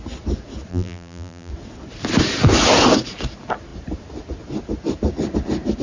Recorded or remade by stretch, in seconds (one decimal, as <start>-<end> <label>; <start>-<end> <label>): 0.0-0.7 recorded; 0.7-1.5 remade; 1.5-5.8 recorded

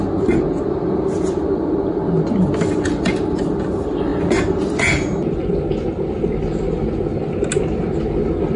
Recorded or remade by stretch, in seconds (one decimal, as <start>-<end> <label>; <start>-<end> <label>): 0.0-8.6 recorded

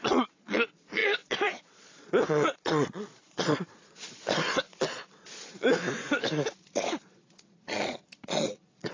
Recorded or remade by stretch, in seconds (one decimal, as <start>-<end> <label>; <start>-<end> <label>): 0.0-5.8 remade; 5.8-6.8 recorded; 6.8-8.9 remade